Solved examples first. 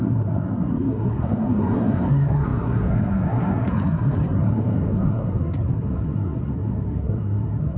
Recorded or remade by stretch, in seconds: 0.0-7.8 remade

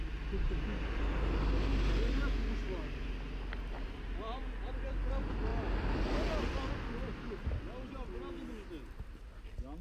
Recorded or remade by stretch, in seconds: 0.0-9.8 recorded